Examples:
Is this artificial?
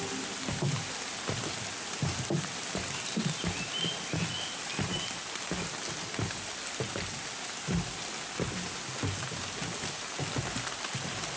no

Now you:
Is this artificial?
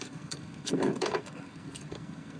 yes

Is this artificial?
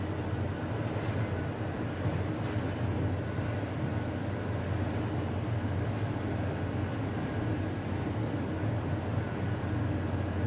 no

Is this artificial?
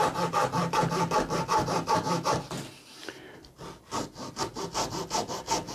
no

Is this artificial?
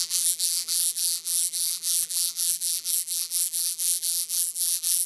yes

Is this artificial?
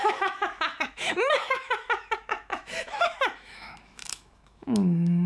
yes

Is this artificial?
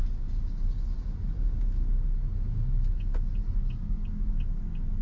no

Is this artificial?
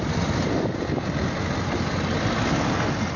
no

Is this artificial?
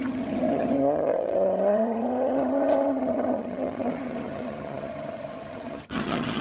yes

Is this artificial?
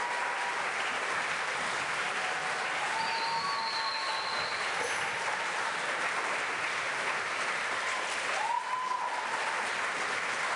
no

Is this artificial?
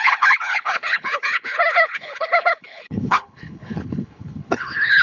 yes